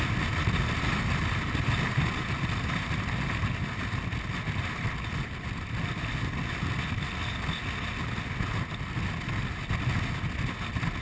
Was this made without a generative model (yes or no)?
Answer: yes